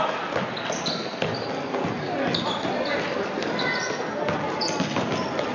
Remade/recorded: recorded